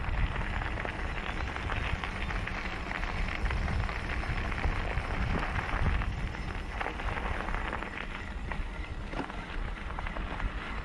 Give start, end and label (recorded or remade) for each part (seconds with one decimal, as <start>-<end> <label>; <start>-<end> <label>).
0.0-10.8 recorded